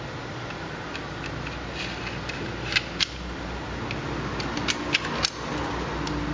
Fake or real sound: real